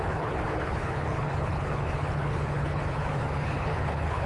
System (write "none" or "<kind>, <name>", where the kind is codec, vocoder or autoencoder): codec, HILCodec